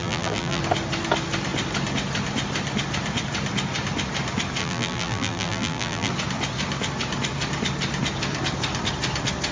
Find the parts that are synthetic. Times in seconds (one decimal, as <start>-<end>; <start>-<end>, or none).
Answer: 0.0-0.6; 4.6-6.1